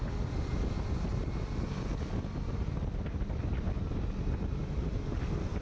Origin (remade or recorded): recorded